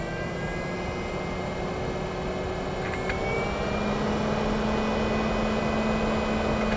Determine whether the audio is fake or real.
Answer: real